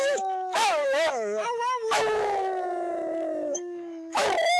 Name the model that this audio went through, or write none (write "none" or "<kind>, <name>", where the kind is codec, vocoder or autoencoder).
autoencoder, DAC-VAE